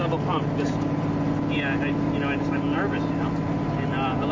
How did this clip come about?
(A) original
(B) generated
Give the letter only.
A